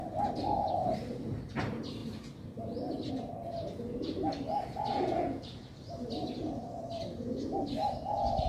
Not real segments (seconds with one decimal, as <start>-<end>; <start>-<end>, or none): 4.9-5.6